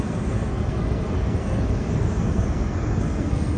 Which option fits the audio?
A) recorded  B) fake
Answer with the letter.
B